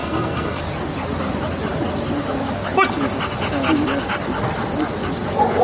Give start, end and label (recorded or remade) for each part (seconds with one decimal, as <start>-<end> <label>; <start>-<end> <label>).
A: 0.0-0.6 remade; 0.6-5.6 recorded